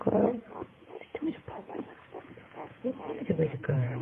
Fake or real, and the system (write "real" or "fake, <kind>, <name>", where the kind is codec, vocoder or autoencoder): fake, vocoder, Vocos